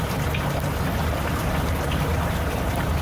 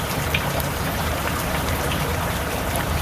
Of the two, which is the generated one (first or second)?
second